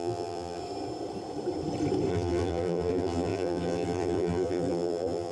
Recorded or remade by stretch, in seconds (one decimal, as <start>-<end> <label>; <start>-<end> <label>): 0.0-0.6 remade; 0.6-2.1 recorded; 2.1-5.3 remade